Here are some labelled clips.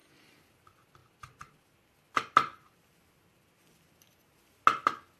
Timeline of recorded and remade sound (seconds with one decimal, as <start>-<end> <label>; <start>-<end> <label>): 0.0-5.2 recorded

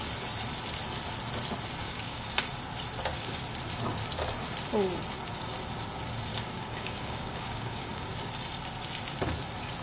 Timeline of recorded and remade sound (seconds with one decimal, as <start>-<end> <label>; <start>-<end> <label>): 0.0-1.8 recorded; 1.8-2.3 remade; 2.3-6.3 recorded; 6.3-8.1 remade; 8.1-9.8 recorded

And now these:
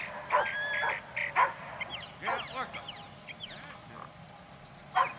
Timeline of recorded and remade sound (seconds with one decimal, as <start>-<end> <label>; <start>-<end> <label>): 0.0-5.2 recorded

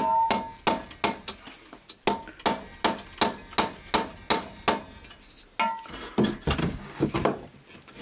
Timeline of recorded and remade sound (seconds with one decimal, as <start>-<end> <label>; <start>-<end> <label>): 0.0-6.6 recorded; 6.6-7.2 remade; 7.2-8.0 recorded

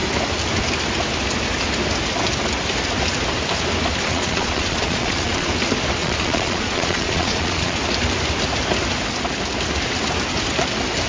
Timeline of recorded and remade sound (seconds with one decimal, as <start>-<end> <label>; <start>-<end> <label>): 0.0-4.1 recorded; 4.1-5.5 remade; 5.5-6.0 recorded; 6.0-7.8 remade; 7.8-11.1 recorded